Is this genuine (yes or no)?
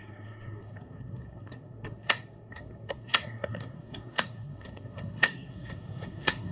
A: no